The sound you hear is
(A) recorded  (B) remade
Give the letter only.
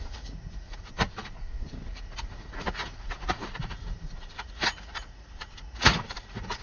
B